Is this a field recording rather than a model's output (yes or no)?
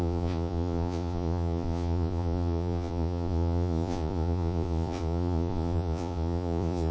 no